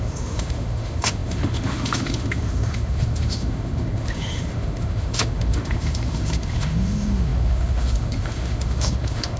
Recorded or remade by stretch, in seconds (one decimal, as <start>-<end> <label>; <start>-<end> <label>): 0.0-9.4 remade